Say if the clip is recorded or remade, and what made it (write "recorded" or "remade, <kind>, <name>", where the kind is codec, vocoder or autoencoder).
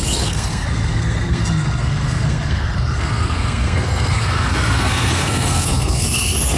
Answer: remade, codec, SNAC